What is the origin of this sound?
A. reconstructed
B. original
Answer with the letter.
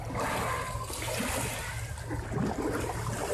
B